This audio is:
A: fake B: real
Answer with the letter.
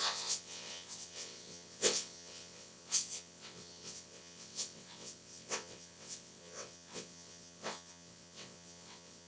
A